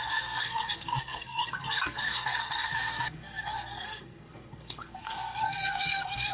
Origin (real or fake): fake